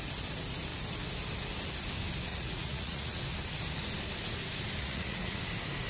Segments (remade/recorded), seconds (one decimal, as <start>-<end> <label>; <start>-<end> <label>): 0.0-2.3 recorded; 2.3-3.2 remade; 3.2-4.8 recorded; 4.8-5.4 remade; 5.4-5.9 recorded